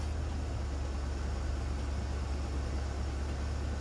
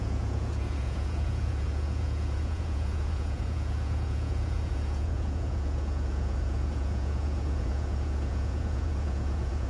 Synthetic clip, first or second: second